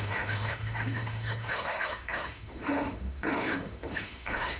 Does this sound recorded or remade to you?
remade